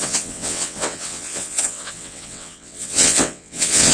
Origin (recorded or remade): remade